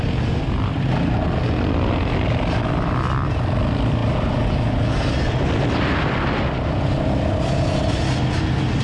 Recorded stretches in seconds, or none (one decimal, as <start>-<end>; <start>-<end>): 0.0-8.8